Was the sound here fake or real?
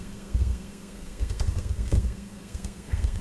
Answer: fake